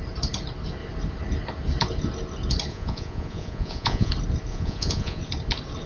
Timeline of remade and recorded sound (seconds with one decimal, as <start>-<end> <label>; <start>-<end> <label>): 0.0-2.7 recorded; 2.7-4.1 remade; 4.1-4.5 recorded; 4.5-5.2 remade; 5.2-5.9 recorded